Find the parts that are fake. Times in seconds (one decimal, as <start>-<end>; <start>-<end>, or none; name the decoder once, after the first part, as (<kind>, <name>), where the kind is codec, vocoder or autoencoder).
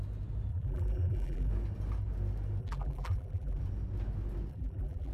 0.5-1.5 (vocoder, BigVGAN v2); 2.6-3.6; 4.5-5.1